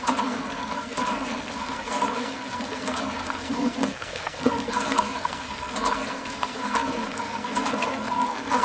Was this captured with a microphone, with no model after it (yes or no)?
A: no